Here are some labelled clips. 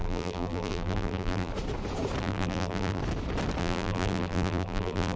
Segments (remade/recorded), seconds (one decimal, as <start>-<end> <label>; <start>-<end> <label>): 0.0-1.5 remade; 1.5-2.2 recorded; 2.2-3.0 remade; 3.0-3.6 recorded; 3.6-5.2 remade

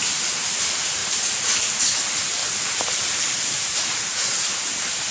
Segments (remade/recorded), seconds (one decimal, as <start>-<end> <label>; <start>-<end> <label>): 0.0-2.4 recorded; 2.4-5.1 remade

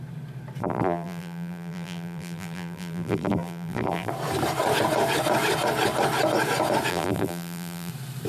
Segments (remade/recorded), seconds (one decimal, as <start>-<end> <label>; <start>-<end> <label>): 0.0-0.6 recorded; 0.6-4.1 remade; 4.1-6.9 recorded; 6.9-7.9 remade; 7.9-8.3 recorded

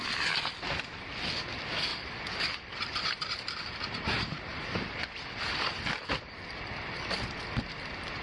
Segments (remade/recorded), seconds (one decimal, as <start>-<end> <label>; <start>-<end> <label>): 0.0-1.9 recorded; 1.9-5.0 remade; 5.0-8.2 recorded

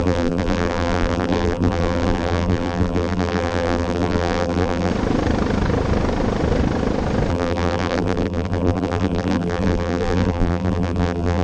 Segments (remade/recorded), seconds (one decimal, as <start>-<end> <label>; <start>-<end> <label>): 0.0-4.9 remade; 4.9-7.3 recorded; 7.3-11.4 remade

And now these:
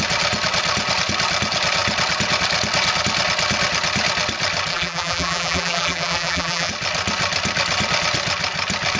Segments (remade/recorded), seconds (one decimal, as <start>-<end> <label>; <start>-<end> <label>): 0.0-4.7 recorded; 4.7-6.7 remade; 6.7-9.0 recorded

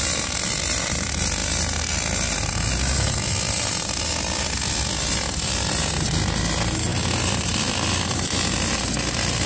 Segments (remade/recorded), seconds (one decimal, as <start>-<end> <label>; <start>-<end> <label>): 0.0-6.9 recorded; 6.9-9.5 remade

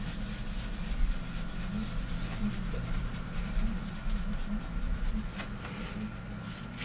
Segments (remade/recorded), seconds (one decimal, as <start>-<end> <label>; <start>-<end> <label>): 0.0-1.8 recorded; 1.8-5.9 remade; 5.9-6.8 recorded